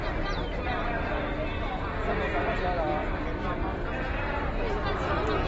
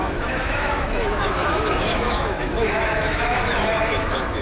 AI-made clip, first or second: second